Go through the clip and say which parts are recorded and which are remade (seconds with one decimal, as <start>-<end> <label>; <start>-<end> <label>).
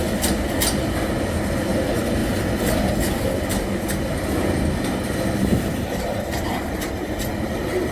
0.0-7.9 recorded